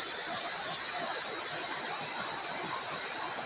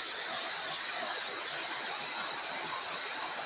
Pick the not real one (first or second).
second